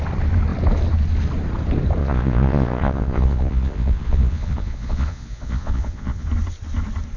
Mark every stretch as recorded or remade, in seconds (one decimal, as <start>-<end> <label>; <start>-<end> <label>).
0.0-2.0 recorded; 2.0-6.3 remade; 6.3-7.2 recorded